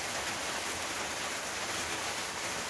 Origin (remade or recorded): recorded